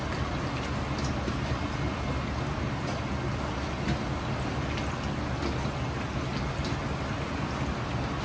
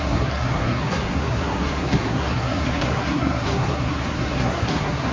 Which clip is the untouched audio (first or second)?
first